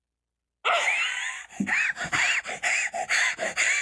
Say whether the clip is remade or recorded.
recorded